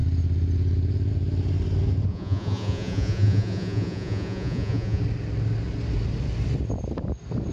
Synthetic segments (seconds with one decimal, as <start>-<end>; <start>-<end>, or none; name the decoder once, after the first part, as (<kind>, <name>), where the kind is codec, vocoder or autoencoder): 2.1-5.0 (vocoder, Vocos)